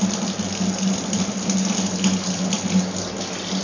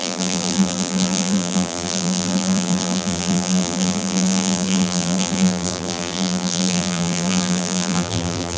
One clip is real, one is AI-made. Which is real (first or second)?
first